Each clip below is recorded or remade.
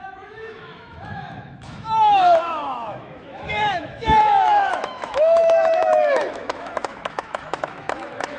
remade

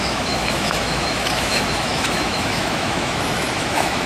remade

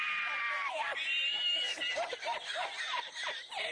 recorded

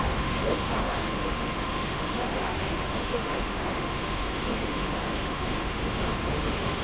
remade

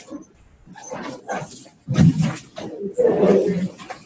recorded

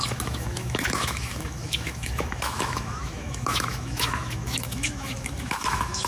remade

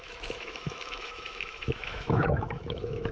remade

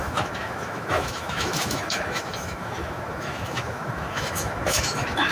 remade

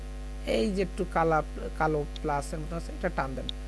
recorded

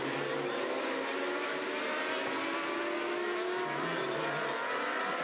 recorded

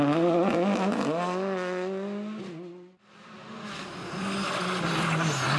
recorded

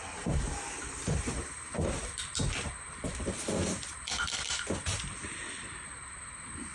recorded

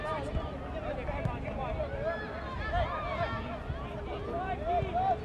recorded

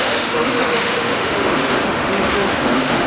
remade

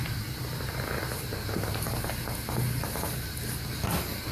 recorded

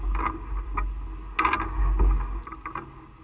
recorded